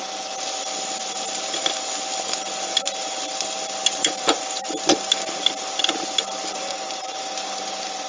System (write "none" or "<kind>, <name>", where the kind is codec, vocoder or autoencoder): none